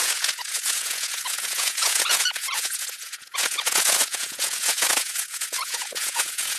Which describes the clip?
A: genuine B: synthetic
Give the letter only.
B